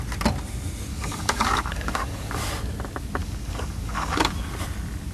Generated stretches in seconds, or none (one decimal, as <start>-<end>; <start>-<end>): 0.9-2.4; 3.2-4.3